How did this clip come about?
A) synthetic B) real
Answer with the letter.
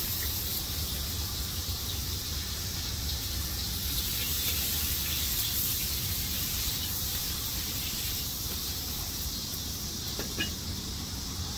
A